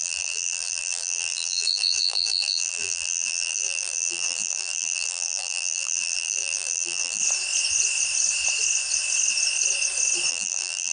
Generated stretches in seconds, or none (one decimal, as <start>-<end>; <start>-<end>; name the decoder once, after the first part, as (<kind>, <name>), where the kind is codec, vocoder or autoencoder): 0.0-7.2 (vocoder, BigVGAN v2); 10.3-10.9